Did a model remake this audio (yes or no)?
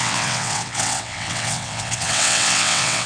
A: yes